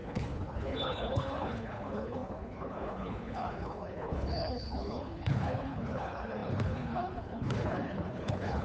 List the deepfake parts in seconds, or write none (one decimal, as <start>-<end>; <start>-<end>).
0.0-8.6